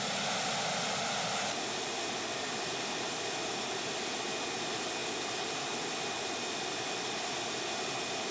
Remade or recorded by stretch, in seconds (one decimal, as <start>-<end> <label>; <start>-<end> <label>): 0.0-8.3 recorded